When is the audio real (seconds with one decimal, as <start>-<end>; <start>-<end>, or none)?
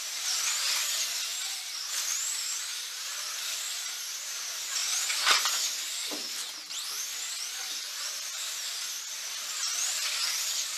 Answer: 0.0-10.8